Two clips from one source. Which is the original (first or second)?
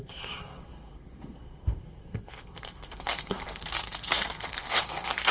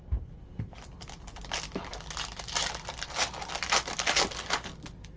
second